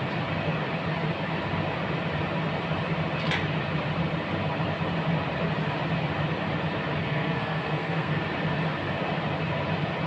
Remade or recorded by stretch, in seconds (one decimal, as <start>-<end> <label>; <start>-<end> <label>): 0.0-7.0 recorded; 7.0-8.2 remade; 8.2-10.1 recorded